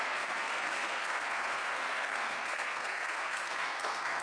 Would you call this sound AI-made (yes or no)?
yes